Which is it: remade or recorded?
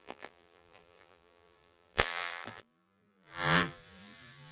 remade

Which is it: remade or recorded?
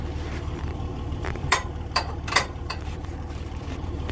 remade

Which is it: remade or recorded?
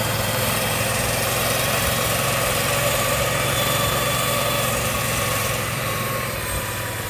remade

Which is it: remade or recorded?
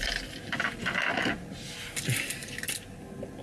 recorded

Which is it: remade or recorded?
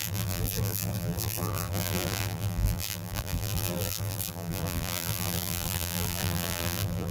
remade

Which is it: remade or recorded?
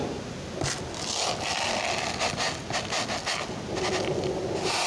recorded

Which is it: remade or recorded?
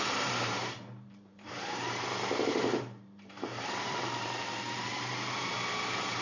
remade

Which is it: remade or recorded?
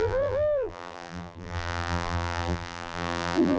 remade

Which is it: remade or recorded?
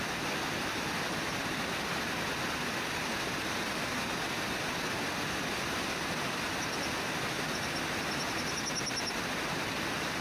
recorded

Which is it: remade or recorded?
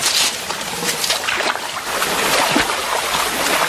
recorded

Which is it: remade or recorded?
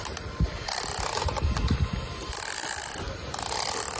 recorded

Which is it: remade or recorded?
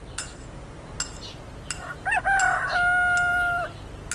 recorded